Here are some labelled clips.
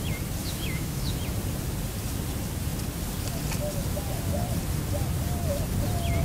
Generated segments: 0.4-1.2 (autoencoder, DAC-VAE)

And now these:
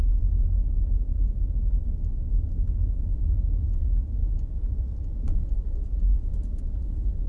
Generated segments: none

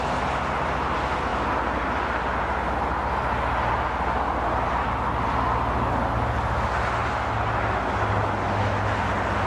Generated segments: none

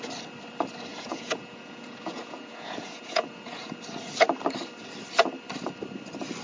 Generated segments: 0.9-3.7 (vocoder, Vocos)